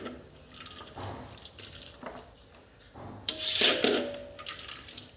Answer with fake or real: fake